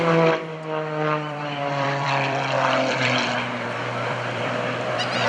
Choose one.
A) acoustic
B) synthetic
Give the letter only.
B